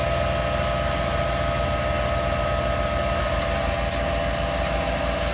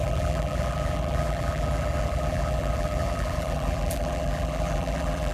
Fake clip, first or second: second